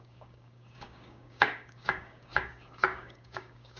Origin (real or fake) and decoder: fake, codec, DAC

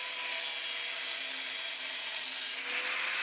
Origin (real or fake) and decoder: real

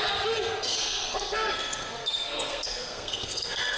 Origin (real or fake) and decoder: fake, codec, SNAC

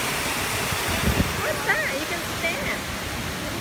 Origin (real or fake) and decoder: real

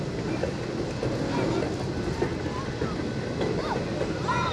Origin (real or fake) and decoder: real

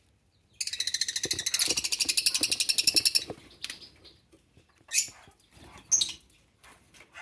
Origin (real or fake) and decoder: real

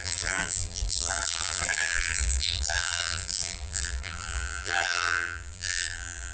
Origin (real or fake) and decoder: fake, vocoder, BigVGAN v2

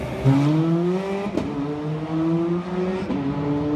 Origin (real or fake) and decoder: real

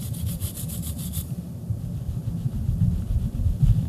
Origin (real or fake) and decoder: real